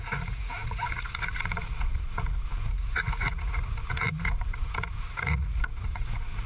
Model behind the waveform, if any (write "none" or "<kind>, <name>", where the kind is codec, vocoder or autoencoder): vocoder, Vocos